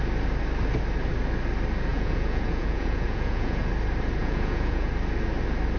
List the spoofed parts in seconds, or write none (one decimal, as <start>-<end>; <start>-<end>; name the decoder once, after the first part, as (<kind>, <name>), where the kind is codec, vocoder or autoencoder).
1.9-3.7 (vocoder, Vocos); 4.2-4.9